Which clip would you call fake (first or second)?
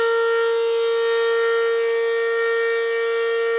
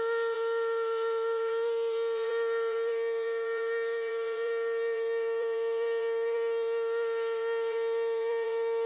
second